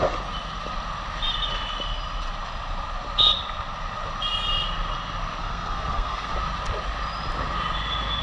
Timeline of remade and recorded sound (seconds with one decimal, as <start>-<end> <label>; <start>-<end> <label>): 0.0-5.4 recorded; 5.4-6.3 remade; 6.3-8.2 recorded